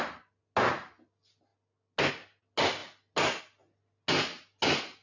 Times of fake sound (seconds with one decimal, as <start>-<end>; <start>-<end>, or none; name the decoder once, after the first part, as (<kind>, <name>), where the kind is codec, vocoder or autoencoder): none